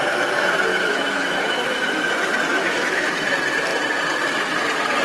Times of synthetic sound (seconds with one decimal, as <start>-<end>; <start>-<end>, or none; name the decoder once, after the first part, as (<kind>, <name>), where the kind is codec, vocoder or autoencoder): 0.7-2.1 (autoencoder, DAC-VAE); 2.5-3.2

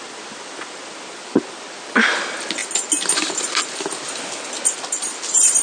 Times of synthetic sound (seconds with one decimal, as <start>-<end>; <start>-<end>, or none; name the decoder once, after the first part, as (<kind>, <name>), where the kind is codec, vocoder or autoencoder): none

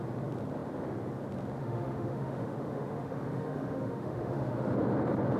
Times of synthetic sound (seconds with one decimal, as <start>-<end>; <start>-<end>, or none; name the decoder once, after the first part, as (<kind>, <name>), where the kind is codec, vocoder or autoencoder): 1.6-4.8 (autoencoder, DAC-VAE)

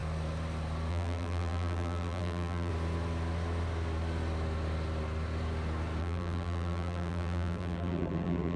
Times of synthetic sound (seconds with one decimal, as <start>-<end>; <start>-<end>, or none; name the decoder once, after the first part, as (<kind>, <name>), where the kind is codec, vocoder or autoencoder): 0.9-2.7 (vocoder, BigVGAN v2); 6.0-8.6

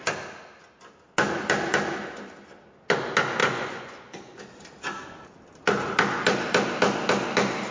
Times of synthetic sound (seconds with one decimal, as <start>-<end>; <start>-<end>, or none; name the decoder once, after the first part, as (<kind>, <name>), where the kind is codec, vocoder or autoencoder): 3.4-4.4 (vocoder, Vocos)